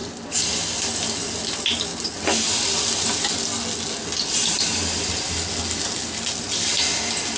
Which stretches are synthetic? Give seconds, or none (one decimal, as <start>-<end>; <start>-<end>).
none